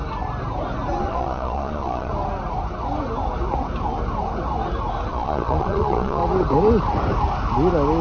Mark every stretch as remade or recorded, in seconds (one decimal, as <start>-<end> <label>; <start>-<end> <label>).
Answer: 0.0-1.0 recorded; 1.0-2.1 remade; 2.1-5.1 recorded; 5.1-6.2 remade; 6.2-8.0 recorded